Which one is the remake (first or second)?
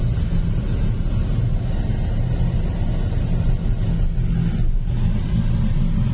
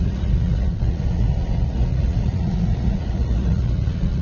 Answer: second